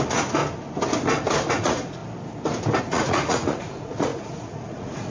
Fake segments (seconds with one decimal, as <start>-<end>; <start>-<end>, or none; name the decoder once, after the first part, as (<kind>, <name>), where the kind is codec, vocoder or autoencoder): 0.0-0.4 (vocoder, Vocos); 1.5-2.0; 2.8-5.1